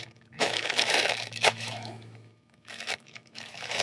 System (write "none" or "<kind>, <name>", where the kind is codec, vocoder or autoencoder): autoencoder, DAC-VAE